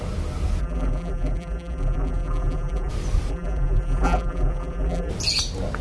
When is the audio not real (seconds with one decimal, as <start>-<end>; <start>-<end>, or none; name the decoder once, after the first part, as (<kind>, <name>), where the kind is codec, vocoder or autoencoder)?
0.6-2.9 (vocoder, BigVGAN v2); 3.3-5.1